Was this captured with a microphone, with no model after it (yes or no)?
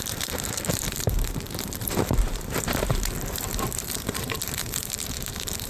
no